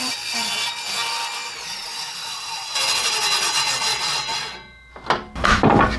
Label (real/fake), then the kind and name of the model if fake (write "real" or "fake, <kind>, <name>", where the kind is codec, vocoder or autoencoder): real